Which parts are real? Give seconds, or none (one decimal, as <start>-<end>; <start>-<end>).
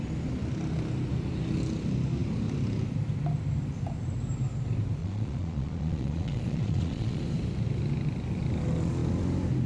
0.0-5.0; 7.2-9.7